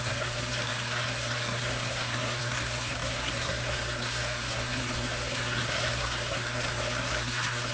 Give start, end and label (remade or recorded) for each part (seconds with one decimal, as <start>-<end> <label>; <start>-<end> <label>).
0.0-7.7 remade